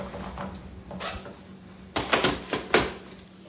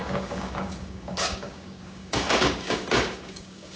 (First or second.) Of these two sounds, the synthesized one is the second